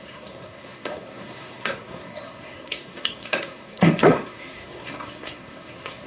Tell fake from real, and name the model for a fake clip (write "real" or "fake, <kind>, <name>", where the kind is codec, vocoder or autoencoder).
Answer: fake, codec, SNAC